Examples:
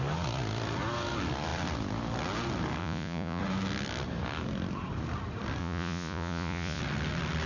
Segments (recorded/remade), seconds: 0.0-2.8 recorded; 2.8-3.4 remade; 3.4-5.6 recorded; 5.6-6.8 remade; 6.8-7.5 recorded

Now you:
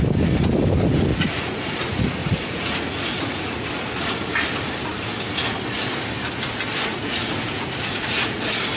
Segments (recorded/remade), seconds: 0.0-1.1 recorded; 1.1-1.8 remade; 1.8-2.2 recorded; 2.2-3.7 remade; 3.7-6.9 recorded; 6.9-8.4 remade; 8.4-8.8 recorded